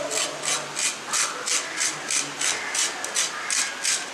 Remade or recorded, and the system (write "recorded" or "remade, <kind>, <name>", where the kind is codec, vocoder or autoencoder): recorded